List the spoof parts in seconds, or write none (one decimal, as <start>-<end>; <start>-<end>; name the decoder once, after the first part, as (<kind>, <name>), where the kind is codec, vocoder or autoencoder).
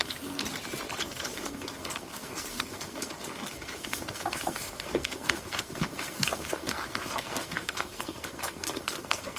0.0-0.4 (codec, SNAC); 1.0-9.4